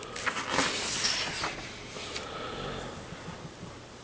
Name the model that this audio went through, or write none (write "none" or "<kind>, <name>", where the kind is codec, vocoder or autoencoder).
none